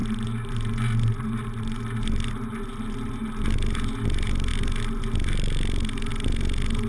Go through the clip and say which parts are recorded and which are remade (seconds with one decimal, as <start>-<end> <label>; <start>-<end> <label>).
0.0-6.9 recorded